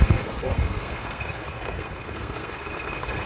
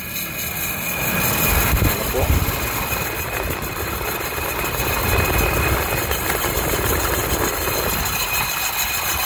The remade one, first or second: first